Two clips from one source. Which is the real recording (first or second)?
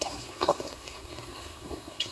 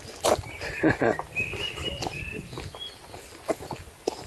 second